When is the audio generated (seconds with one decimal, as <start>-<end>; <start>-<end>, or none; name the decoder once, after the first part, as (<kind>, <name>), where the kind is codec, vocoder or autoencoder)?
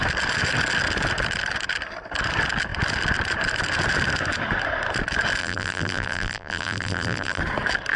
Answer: 5.4-7.4 (vocoder, BigVGAN v2)